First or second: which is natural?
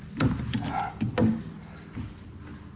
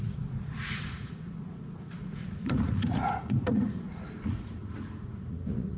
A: first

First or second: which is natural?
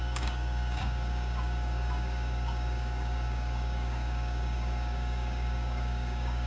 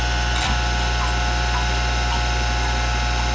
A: second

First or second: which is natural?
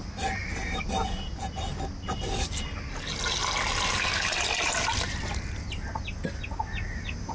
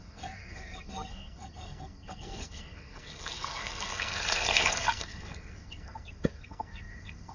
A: first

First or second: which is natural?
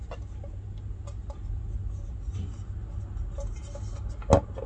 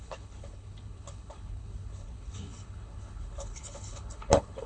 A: first